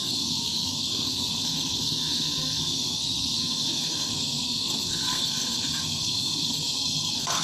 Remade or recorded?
remade